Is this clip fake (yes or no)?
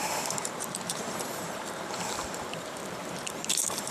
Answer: yes